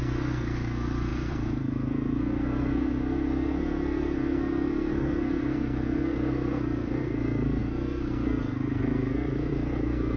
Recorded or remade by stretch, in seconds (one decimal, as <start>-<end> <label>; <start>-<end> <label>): 0.0-10.2 remade